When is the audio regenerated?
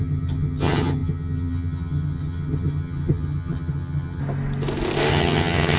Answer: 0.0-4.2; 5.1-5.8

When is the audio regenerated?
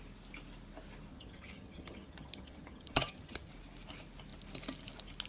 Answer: 1.1-3.5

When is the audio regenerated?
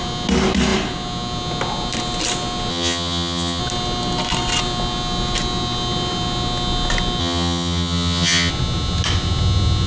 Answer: 2.7-3.6; 7.2-8.5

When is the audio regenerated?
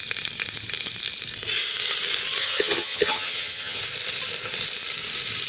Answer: 2.4-3.8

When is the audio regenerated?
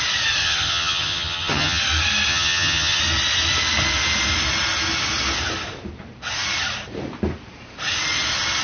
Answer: 0.4-1.8; 2.3-3.0